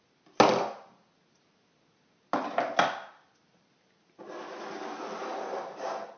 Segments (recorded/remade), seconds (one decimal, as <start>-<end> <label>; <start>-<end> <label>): 0.0-5.3 recorded; 5.3-6.2 remade

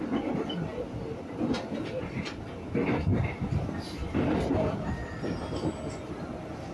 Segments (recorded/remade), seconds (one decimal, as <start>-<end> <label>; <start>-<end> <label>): 0.0-0.7 recorded; 0.7-1.4 remade; 1.4-3.1 recorded; 3.1-4.9 remade; 4.9-6.7 recorded

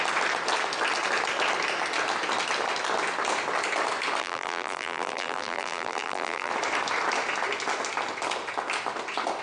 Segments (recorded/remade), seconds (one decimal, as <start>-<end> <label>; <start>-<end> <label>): 0.0-4.2 recorded; 4.2-6.5 remade; 6.5-9.4 recorded